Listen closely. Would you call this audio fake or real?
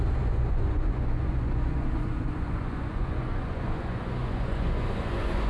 fake